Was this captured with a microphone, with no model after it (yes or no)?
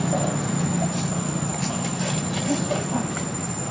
yes